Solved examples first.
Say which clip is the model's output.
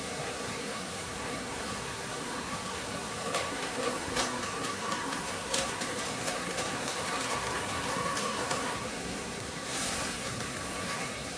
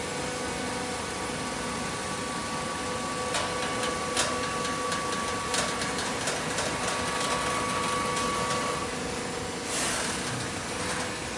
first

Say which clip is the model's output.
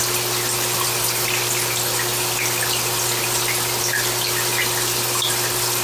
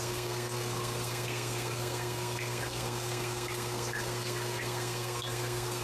second